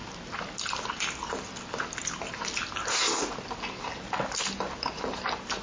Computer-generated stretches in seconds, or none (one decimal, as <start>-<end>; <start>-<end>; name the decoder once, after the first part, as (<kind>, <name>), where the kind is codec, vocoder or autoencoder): none